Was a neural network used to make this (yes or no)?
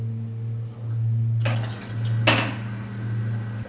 no